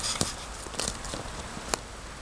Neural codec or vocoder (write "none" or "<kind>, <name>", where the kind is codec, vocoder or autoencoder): vocoder, BigVGAN v2